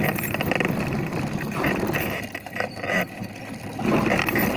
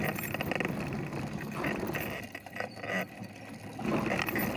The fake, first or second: first